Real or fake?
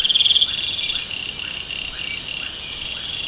real